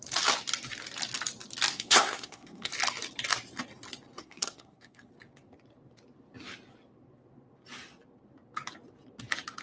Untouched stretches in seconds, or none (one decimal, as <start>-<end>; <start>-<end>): 0.0-1.7; 2.7-4.2; 5.1-9.6